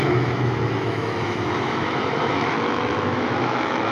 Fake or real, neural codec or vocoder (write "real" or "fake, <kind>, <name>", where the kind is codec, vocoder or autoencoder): fake, autoencoder, DAC-VAE